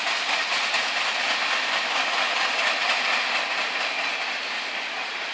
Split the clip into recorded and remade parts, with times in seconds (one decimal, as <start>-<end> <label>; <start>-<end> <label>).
0.0-5.3 recorded